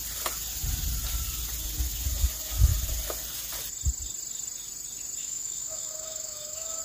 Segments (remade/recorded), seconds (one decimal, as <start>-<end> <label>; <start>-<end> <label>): 0.0-5.2 recorded; 5.2-6.8 remade